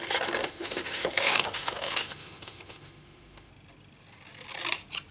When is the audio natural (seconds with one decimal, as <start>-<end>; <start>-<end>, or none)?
0.0-0.4; 3.5-5.1